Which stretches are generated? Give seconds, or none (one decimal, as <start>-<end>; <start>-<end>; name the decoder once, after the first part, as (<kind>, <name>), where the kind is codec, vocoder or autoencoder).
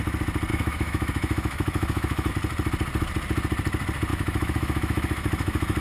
0.5-2.3 (autoencoder, DAC-VAE); 4.1-5.8